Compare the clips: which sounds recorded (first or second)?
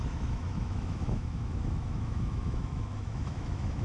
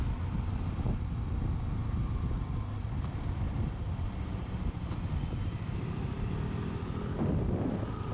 second